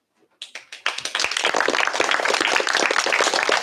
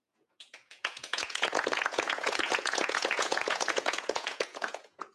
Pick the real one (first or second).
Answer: first